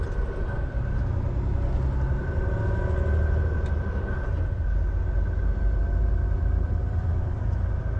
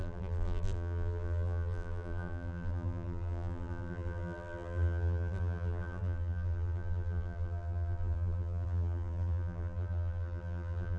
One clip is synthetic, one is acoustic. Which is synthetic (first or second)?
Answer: second